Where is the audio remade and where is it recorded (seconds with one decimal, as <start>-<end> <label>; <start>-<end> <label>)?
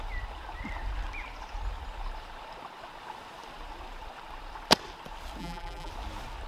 0.0-5.4 recorded; 5.4-5.9 remade; 5.9-6.5 recorded